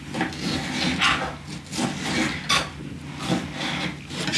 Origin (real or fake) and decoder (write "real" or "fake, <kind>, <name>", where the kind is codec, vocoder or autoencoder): real